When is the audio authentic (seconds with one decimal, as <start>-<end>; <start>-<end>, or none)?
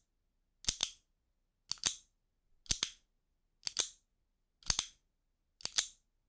0.0-6.3